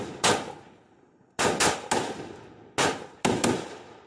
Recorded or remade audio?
recorded